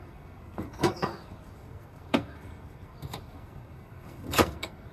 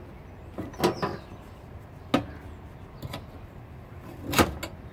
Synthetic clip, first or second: first